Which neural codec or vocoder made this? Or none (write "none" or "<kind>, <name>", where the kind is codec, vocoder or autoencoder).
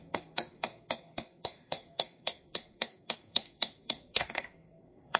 codec, SNAC